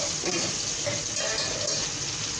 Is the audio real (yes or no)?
yes